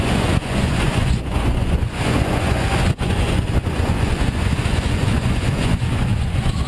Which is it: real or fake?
fake